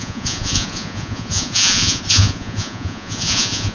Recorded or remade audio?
remade